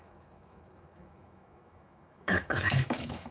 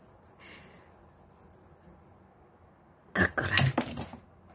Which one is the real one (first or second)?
second